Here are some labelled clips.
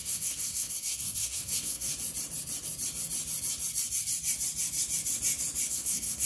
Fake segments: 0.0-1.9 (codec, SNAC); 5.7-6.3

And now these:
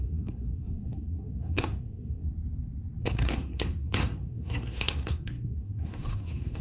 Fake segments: 0.0-2.3 (codec, SNAC); 3.0-6.6

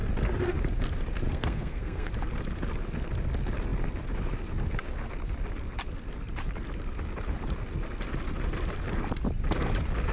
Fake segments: 1.3-2.1 (codec, SNAC)

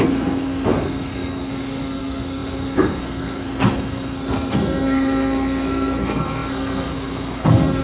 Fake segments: 0.0-7.8 (codec, SNAC)